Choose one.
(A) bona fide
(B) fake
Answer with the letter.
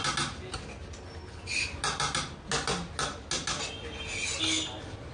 A